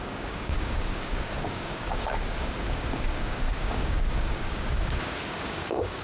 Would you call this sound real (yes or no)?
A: no